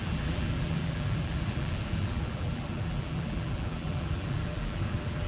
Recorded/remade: remade